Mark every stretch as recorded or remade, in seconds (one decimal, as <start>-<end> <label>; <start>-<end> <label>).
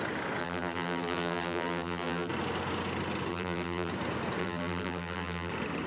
0.0-0.4 recorded; 0.4-2.3 remade; 2.3-3.3 recorded; 3.3-3.9 remade; 3.9-4.4 recorded; 4.4-5.5 remade; 5.5-5.9 recorded